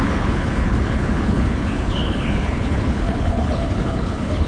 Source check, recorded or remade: remade